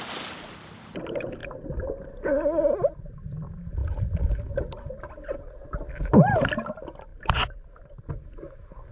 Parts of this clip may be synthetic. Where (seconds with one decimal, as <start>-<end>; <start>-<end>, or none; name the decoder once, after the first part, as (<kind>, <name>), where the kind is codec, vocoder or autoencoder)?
none